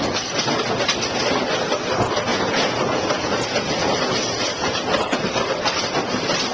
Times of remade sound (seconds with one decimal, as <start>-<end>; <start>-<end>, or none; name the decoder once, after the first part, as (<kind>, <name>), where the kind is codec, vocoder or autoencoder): 2.3-5.3 (vocoder, Vocos)